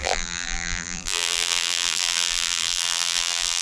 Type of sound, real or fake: fake